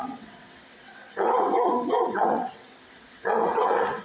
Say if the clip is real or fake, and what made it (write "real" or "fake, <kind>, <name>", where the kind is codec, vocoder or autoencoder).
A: fake, vocoder, WaveNeXt